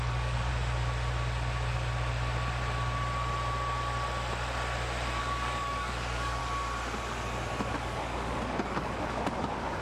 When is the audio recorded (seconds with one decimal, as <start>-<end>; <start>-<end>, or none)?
0.5-5.2; 6.4-7.7